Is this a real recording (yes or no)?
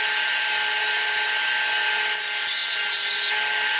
yes